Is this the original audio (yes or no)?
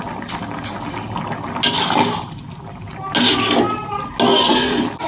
yes